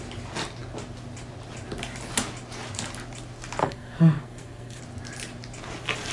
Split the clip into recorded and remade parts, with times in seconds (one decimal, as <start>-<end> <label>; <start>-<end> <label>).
0.0-3.6 recorded; 3.6-4.8 remade; 4.8-6.1 recorded